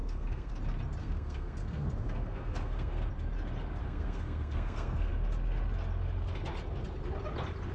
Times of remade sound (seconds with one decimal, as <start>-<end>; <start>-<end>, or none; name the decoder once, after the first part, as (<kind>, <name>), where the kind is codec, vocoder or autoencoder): 0.0-0.5 (codec, SNAC); 1.0-3.1; 3.8-5.1